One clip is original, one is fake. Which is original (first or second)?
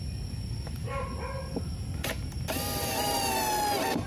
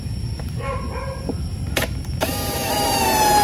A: first